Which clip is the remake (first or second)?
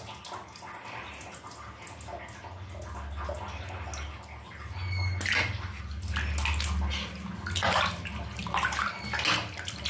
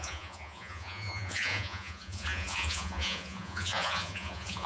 second